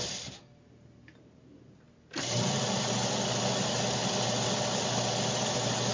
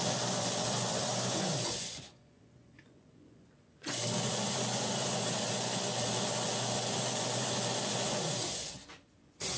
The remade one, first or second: second